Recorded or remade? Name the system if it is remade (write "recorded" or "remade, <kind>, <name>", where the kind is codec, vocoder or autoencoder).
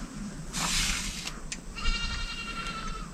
recorded